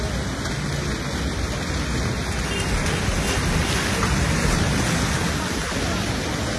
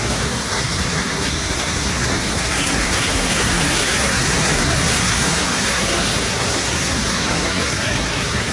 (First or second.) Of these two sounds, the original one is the first